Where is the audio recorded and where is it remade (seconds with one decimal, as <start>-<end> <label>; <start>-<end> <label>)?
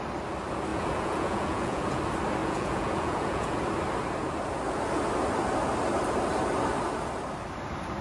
0.0-0.7 recorded; 0.7-2.0 remade; 2.0-2.4 recorded; 2.4-3.6 remade; 3.6-8.0 recorded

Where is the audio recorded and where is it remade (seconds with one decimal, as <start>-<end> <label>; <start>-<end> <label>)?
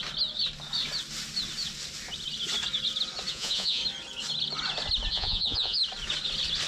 0.0-3.3 recorded; 3.3-3.8 remade; 3.8-5.1 recorded; 5.1-5.8 remade; 5.8-6.7 recorded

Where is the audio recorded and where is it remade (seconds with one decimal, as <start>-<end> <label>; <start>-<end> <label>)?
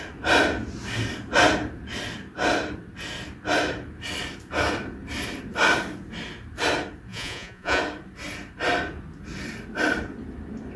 0.0-7.1 recorded; 7.1-7.8 remade; 7.8-10.8 recorded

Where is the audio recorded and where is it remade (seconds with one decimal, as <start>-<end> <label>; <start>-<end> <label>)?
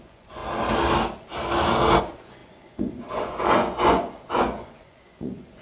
0.0-0.4 remade; 0.4-2.0 recorded; 2.0-5.6 remade